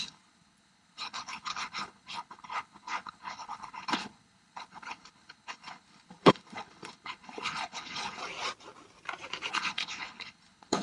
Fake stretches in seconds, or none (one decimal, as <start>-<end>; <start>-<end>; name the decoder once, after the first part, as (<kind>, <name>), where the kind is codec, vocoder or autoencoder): 0.0-8.2 (codec, HILCodec); 9.5-10.8